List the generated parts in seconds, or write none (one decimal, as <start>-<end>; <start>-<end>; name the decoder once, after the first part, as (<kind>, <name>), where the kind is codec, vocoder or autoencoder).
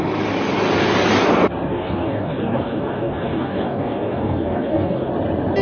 1.7-5.1 (codec, DAC)